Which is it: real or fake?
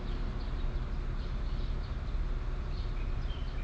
real